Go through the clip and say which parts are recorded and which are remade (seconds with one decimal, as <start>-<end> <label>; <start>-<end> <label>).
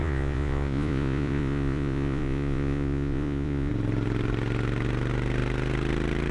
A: 0.0-3.7 remade; 3.7-6.3 recorded